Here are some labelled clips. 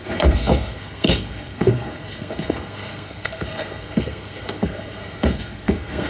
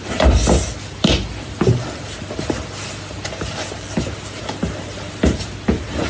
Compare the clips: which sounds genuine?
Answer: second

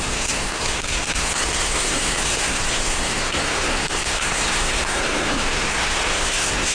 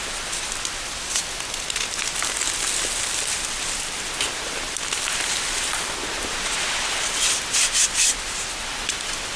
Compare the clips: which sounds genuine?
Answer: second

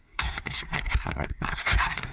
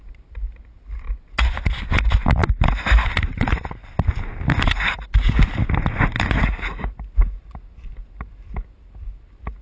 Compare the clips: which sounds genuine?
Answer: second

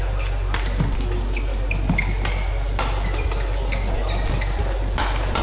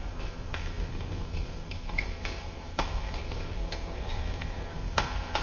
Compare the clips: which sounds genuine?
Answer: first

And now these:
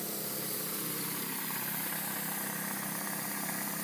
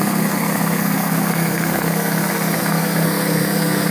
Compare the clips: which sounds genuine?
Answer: first